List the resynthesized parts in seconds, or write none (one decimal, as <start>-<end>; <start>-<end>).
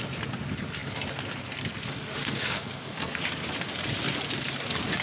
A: 2.2-3.2